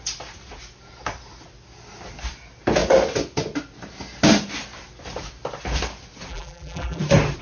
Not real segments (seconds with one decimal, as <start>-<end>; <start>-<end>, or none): 6.3-7.0